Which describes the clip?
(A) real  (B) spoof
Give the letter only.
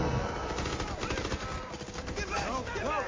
A